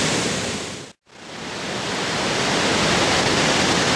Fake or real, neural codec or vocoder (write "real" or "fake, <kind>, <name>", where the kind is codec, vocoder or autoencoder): real